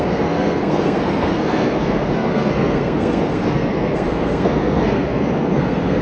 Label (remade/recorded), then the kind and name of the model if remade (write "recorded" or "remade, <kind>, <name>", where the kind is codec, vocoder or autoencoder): remade, codec, SNAC